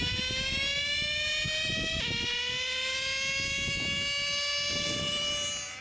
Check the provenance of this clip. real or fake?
real